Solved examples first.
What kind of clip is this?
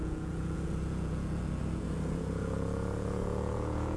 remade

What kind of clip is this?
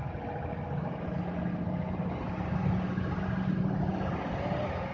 recorded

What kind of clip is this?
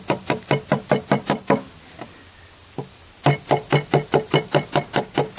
recorded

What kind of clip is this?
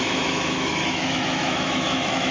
remade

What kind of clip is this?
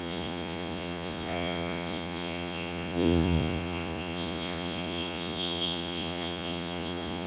remade